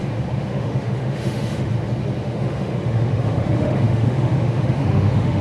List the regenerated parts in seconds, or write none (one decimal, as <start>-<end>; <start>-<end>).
0.5-1.7; 2.2-5.4